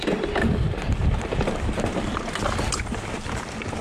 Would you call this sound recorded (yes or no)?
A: yes